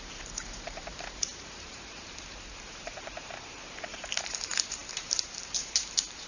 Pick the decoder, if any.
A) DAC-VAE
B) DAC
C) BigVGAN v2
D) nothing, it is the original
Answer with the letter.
C